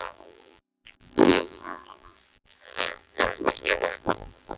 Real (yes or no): no